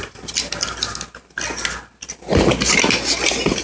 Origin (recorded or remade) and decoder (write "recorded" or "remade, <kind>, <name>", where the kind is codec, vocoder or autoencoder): recorded